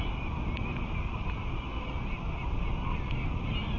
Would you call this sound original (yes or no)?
yes